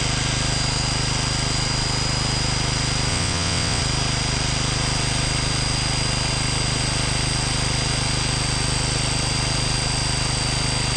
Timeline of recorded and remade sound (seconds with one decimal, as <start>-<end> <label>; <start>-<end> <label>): 0.0-3.1 recorded; 3.1-3.8 remade; 3.8-11.0 recorded